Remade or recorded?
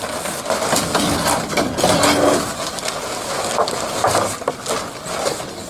recorded